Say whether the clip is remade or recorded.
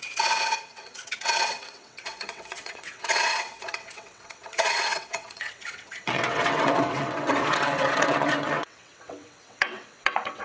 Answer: remade